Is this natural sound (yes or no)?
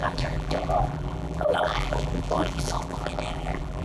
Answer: no